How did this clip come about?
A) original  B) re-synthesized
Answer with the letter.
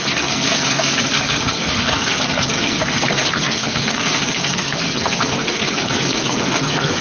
B